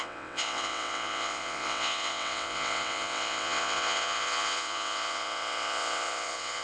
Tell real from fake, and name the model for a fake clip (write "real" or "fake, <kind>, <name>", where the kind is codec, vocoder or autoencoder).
fake, vocoder, WaveNeXt